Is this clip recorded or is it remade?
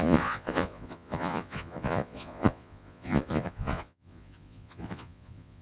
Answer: remade